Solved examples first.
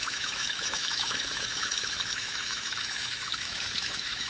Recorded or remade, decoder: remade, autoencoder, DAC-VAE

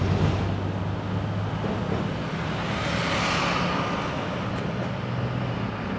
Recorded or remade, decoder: recorded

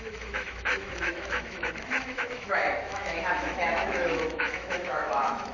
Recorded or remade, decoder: remade, autoencoder, DAC-VAE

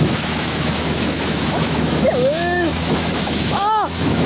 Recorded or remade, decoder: remade, autoencoder, DAC-VAE